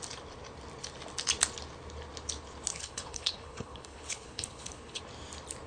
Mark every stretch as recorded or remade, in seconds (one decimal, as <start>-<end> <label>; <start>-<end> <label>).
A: 0.0-2.7 recorded; 2.7-5.0 remade; 5.0-5.7 recorded